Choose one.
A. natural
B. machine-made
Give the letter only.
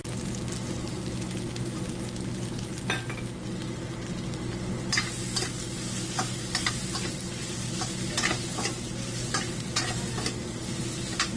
A